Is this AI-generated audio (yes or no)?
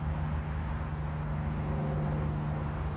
no